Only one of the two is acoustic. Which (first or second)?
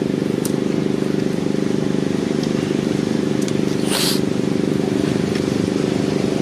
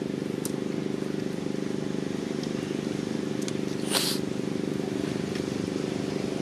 second